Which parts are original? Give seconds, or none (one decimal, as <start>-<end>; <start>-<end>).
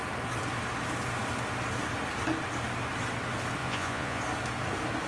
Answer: 0.0-3.6; 4.2-5.1